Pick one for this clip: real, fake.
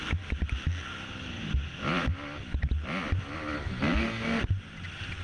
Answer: real